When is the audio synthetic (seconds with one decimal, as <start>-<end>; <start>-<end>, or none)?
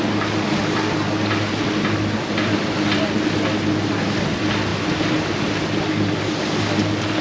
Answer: none